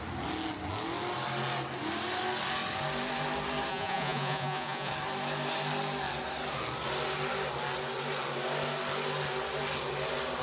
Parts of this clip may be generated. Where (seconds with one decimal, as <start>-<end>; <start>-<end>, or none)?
3.7-4.9

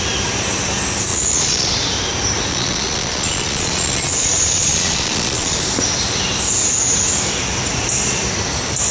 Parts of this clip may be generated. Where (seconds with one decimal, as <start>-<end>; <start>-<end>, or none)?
1.1-1.7; 2.5-5.6

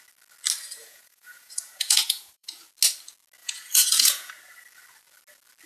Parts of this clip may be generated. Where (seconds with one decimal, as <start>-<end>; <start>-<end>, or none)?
0.8-2.6; 3.4-4.3

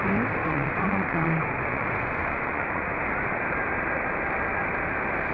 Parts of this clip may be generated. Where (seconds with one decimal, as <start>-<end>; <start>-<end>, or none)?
0.4-3.0

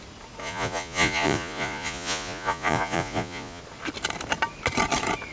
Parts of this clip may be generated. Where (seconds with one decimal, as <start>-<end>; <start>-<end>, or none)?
0.4-3.6

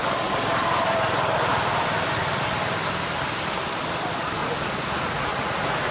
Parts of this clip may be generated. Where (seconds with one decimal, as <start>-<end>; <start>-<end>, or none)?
4.4-5.9